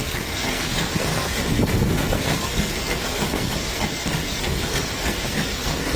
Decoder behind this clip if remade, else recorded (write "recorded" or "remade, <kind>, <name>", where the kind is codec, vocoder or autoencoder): remade, codec, SNAC